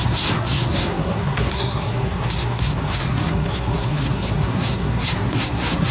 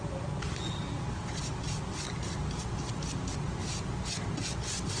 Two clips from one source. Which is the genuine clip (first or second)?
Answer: second